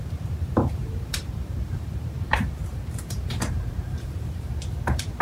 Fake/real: fake